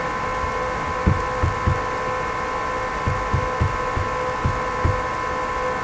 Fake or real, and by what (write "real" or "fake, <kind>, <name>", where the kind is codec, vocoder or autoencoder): real